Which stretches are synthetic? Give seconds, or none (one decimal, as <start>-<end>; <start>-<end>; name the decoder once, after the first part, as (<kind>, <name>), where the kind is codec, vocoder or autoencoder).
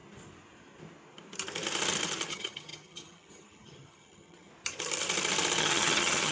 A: 2.3-4.5 (vocoder, HiFi-GAN); 5.6-6.3